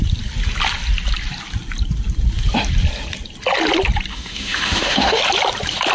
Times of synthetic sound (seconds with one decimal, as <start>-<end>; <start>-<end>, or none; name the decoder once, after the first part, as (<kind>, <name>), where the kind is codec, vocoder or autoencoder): 4.1-5.2 (autoencoder, DAC-VAE)